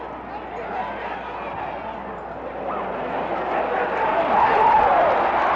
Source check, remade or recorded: recorded